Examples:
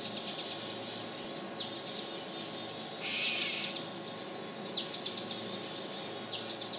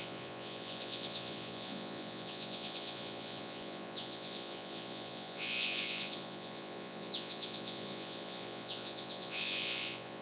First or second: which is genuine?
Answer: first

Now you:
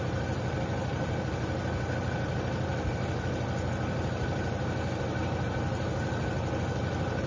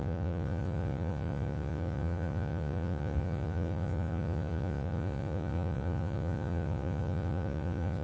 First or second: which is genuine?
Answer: first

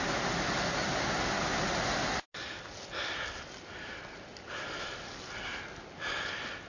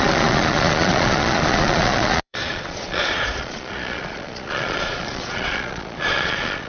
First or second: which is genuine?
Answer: first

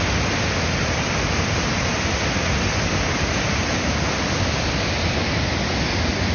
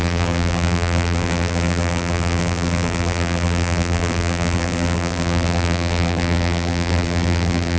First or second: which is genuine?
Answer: first